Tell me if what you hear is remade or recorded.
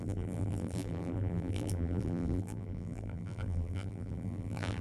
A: remade